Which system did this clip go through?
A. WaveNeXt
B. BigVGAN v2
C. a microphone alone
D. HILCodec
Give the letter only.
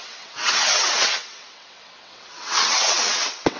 A